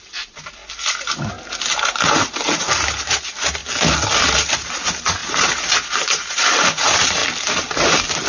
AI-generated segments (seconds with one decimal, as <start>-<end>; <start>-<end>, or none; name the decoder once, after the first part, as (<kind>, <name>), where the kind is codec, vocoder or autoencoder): 0.0-0.6 (vocoder, BigVGAN v2); 1.8-3.6; 4.2-7.2